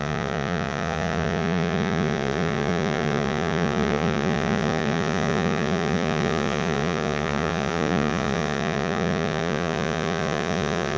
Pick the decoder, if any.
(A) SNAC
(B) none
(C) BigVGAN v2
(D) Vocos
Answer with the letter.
D